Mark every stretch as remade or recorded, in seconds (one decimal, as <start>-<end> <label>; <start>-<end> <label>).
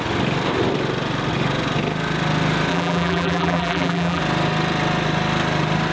0.0-2.7 recorded; 2.7-4.2 remade; 4.2-5.9 recorded